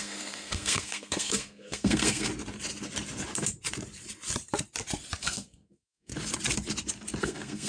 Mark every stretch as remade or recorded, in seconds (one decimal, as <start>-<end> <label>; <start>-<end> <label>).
0.0-2.3 remade; 2.3-5.2 recorded; 5.2-6.1 remade; 6.1-7.2 recorded; 7.2-7.7 remade